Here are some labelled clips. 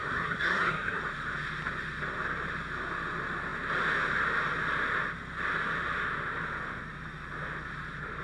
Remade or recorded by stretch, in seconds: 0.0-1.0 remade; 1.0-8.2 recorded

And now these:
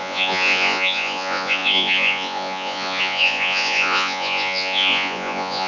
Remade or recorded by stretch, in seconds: 0.0-5.7 remade

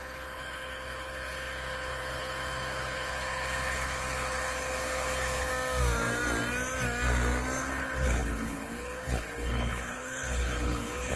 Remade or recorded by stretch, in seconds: 0.0-5.5 remade; 5.5-7.6 recorded; 7.6-11.2 remade

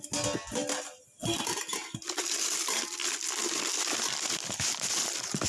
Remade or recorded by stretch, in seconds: 0.0-5.5 recorded